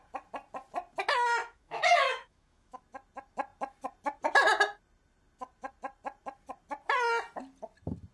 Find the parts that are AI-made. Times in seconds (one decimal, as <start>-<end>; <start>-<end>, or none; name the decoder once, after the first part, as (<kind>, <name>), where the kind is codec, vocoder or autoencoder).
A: 1.4-2.8 (autoencoder, DAC-VAE)